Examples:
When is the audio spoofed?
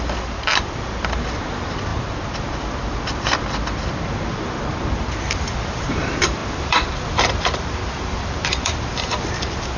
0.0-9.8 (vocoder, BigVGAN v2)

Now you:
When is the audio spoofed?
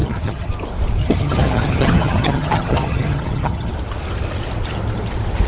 0.0-0.5 (vocoder, HiFi-GAN); 1.0-3.7